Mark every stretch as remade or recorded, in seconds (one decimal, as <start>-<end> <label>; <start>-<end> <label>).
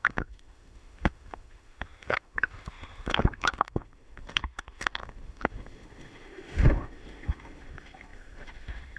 0.0-9.0 remade